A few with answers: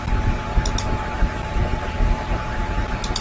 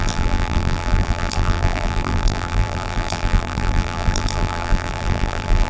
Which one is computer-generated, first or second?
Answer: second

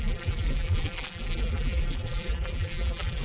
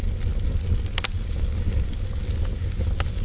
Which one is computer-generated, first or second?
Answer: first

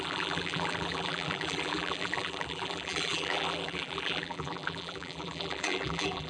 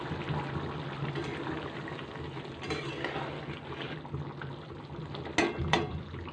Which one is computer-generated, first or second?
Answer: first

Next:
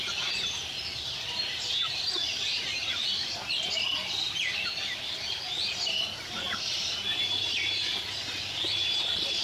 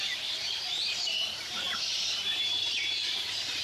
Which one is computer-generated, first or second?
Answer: second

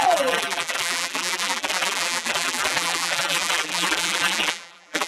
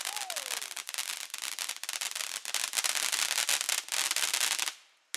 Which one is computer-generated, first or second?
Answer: first